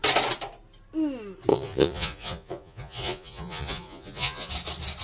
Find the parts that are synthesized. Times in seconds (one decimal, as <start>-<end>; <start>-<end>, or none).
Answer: 1.5-4.5

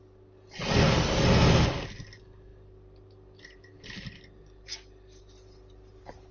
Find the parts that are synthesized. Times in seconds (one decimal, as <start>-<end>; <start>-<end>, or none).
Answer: none

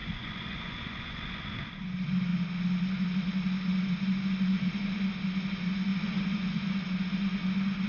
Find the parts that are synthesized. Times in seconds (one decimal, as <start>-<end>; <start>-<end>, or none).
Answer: 0.0-1.4; 5.9-6.8